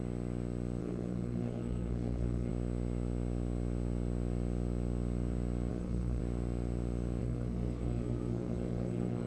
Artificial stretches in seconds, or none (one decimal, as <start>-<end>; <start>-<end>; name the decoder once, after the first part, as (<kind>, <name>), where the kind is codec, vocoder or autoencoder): 0.8-2.5 (codec, SNAC); 5.7-6.2; 7.2-9.3